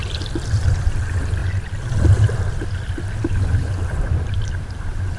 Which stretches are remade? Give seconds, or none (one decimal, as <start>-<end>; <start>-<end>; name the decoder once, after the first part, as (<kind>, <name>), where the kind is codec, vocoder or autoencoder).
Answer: 0.0-1.4 (vocoder, BigVGAN v2); 2.7-5.2